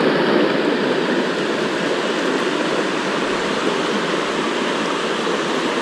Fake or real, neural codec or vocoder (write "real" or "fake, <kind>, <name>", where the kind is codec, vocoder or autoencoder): real